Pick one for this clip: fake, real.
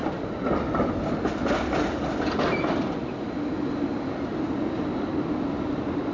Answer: real